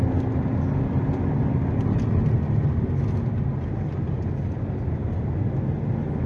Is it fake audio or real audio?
real